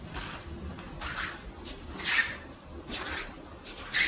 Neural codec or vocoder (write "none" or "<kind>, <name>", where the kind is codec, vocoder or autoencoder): vocoder, BigVGAN v2